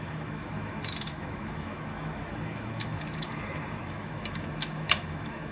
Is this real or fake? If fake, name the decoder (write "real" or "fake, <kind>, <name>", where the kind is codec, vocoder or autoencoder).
fake, autoencoder, DAC-VAE